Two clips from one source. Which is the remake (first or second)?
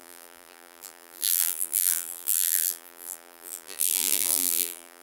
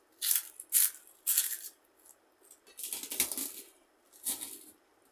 first